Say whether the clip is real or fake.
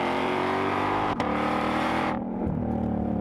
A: fake